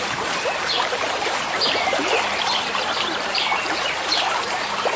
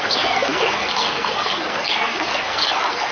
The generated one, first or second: second